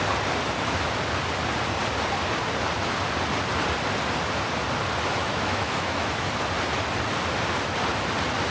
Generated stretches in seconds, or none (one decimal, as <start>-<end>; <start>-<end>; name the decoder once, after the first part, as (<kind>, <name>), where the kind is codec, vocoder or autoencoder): 5.2-6.3 (autoencoder, DAC-VAE)